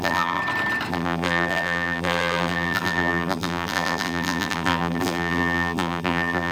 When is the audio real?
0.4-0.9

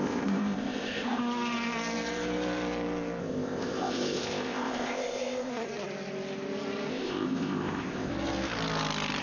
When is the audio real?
1.2-3.2; 5.5-6.9; 8.1-9.2

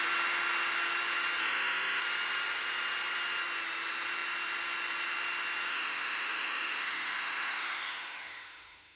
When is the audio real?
0.0-1.4; 2.0-5.7

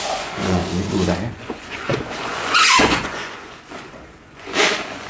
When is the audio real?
0.6-1.3

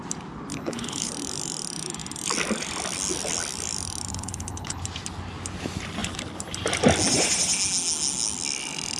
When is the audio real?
0.0-0.5; 1.1-4.1; 4.8-9.0

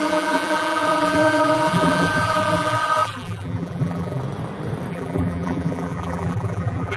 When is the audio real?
4.2-4.9

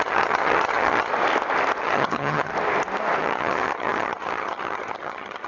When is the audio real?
1.1-1.8; 2.5-3.2

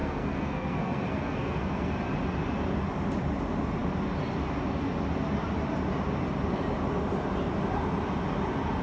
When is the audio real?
1.9-8.8